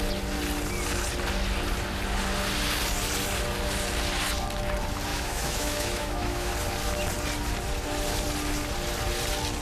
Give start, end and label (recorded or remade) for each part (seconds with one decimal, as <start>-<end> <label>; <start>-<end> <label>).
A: 0.0-5.1 recorded; 5.1-6.5 remade; 6.5-9.6 recorded